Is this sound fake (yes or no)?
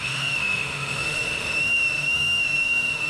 yes